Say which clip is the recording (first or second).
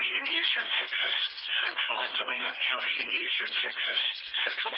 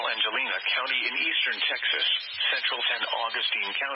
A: second